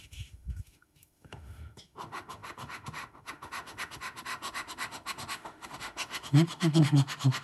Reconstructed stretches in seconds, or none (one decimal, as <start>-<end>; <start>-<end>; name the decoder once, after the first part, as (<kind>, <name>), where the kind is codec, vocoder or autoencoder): 0.0-7.4 (autoencoder, DAC-VAE)